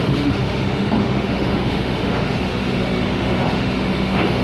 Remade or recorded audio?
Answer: remade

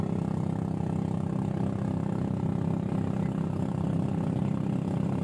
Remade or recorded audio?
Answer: recorded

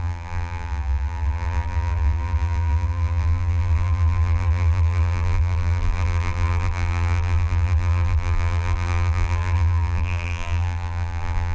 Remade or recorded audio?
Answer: remade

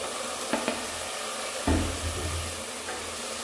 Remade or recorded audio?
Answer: recorded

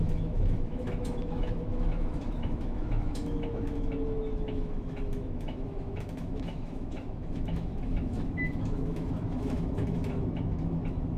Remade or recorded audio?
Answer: remade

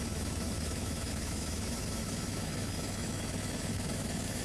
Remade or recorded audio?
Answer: remade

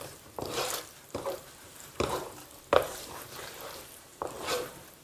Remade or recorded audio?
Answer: remade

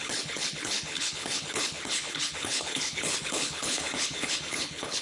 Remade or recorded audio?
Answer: remade